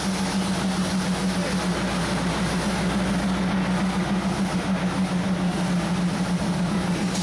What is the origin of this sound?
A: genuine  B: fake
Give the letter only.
A